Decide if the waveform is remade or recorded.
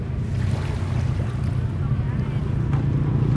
recorded